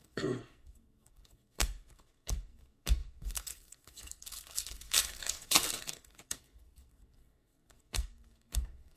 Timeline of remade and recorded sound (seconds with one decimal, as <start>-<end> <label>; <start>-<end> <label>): 0.0-9.0 remade